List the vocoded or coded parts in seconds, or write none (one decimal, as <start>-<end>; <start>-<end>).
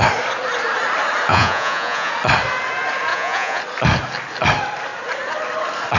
1.3-2.1; 3.1-3.6